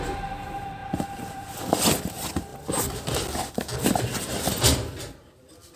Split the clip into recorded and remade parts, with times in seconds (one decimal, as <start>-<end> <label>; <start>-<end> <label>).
0.0-5.8 recorded